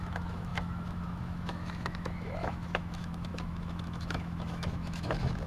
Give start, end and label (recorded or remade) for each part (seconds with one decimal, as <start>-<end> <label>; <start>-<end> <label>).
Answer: 0.0-5.5 remade